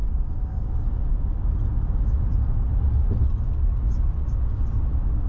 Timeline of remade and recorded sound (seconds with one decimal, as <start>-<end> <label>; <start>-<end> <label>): 0.0-5.3 recorded